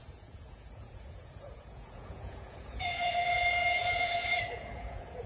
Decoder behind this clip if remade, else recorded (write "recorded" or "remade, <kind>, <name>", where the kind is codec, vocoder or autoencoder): remade, vocoder, Vocos